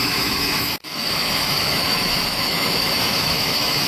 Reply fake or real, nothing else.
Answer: fake